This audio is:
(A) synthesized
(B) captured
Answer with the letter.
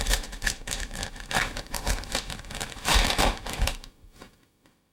A